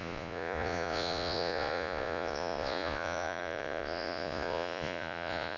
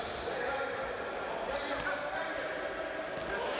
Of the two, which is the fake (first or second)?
first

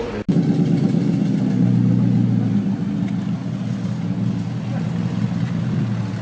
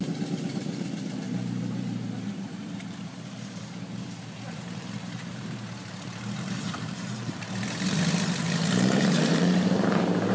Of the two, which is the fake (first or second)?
second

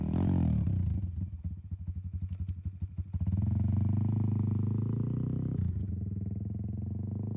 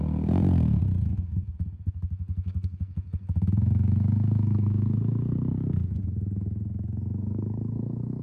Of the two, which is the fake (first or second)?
second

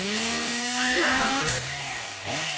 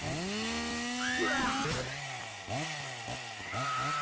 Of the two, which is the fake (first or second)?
first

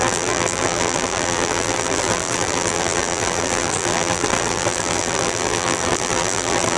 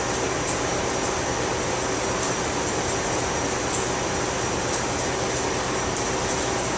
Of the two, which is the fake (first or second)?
first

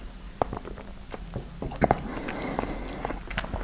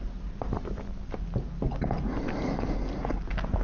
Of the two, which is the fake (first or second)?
first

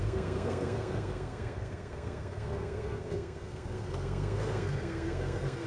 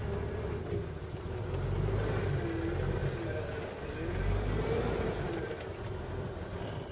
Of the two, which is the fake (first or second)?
first